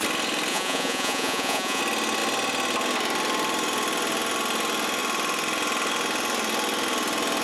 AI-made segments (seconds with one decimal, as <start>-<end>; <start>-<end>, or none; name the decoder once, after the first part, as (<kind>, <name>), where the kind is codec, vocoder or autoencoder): 0.5-1.8 (vocoder, Vocos)